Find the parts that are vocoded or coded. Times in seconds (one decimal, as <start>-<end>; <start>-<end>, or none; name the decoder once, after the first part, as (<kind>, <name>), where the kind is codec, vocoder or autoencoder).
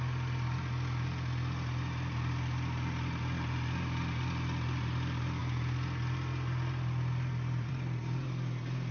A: none